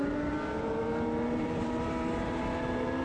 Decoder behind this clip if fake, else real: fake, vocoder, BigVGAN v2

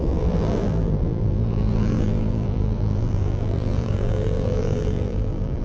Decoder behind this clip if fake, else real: fake, vocoder, BigVGAN v2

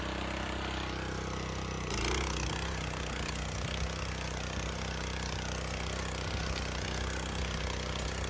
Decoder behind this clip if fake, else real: real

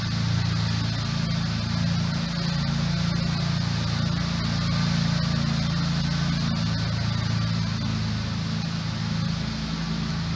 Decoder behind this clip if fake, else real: real